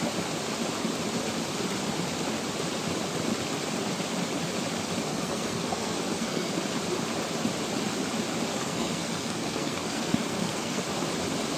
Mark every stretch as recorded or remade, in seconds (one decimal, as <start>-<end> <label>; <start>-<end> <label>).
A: 0.0-5.1 recorded; 5.1-6.5 remade; 6.5-8.5 recorded; 8.5-10.8 remade; 10.8-11.6 recorded